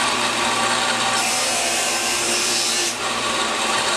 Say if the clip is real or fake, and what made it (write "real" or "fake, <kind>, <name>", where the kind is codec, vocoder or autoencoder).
fake, vocoder, BigVGAN v2